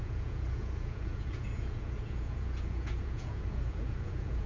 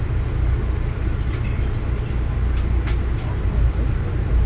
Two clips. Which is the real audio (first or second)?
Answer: second